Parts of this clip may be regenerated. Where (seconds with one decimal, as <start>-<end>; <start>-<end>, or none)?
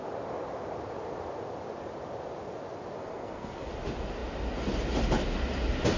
3.0-3.7